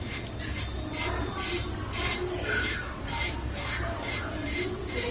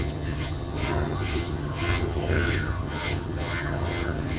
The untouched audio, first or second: first